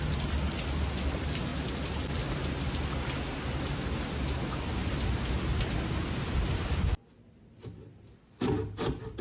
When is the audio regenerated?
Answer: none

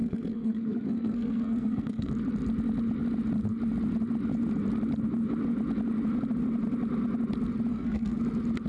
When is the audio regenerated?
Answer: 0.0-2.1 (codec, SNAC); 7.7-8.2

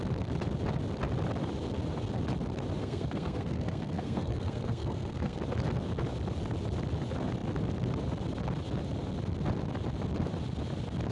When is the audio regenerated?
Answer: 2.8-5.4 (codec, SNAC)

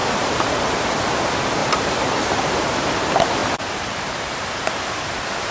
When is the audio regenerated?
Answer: 0.0-1.0 (vocoder, BigVGAN v2); 1.6-2.8; 3.4-4.3

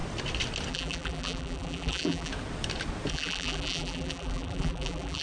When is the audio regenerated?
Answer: 0.7-2.3 (vocoder, BigVGAN v2); 3.1-5.2

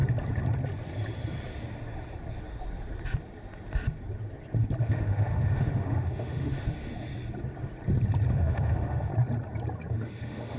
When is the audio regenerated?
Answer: 4.8-6.9 (autoencoder, DAC-VAE); 8.3-9.1; 9.9-10.6

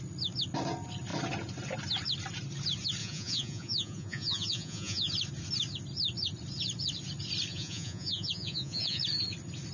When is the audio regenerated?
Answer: 3.0-5.1 (vocoder, Vocos); 7.5-9.0